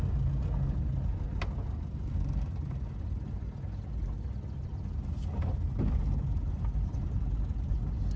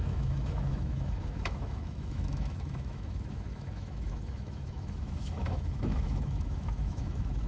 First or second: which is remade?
second